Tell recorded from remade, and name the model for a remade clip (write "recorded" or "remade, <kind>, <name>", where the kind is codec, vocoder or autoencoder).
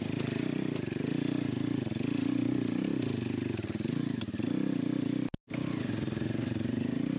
recorded